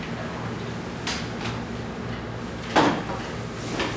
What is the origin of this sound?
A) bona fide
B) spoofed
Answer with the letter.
A